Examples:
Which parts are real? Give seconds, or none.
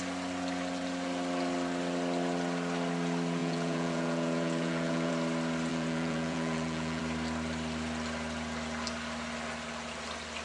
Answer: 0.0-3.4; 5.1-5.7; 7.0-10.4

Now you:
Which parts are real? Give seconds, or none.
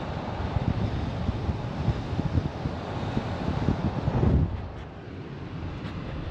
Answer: 0.0-6.3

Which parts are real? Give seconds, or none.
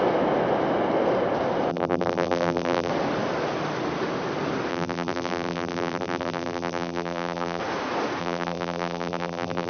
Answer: 0.0-1.7; 2.9-4.7; 7.6-8.2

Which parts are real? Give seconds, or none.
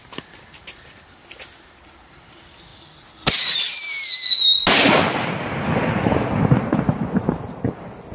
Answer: 0.0-8.1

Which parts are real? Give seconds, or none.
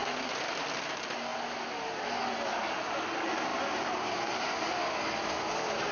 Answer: 0.0-3.5; 4.7-5.9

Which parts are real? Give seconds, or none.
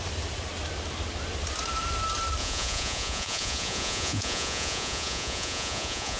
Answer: 0.0-2.4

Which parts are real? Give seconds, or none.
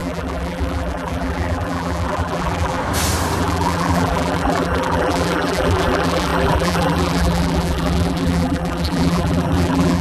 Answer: 2.8-3.4